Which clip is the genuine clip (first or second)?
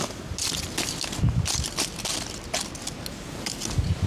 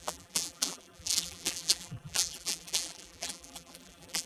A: first